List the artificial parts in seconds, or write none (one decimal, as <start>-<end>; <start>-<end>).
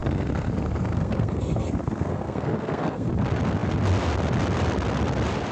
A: 0.0-3.1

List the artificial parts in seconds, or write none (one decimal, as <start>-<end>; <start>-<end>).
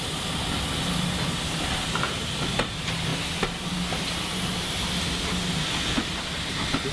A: none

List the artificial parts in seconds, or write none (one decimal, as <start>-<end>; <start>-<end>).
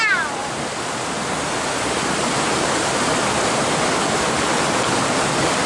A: none